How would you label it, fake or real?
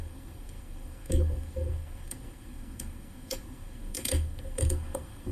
fake